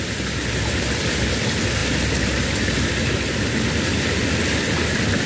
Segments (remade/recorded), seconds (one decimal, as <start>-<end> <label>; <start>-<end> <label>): 0.0-5.3 recorded